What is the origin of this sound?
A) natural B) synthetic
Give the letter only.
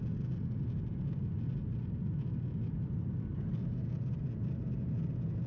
A